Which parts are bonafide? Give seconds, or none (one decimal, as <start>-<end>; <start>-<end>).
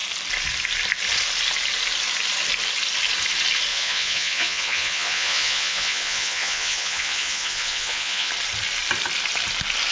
0.0-3.7; 8.3-9.9